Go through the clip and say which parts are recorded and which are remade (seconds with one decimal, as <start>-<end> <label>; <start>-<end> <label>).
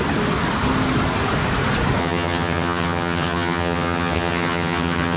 0.0-2.0 recorded; 2.0-5.2 remade